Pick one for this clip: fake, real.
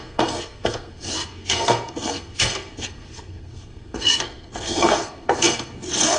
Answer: fake